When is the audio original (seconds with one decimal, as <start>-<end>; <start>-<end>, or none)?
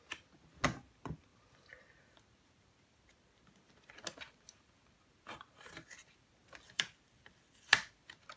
0.0-8.4